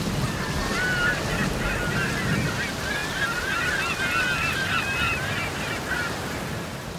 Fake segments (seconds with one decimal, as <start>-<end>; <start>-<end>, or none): 0.0-1.4; 2.6-3.0; 6.4-7.0